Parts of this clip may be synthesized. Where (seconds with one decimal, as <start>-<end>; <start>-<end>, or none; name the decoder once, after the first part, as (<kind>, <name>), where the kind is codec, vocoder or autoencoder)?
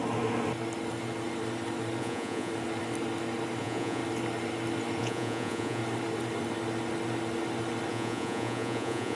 2.0-2.5 (vocoder, Vocos); 3.6-4.0; 5.0-5.8; 7.9-9.2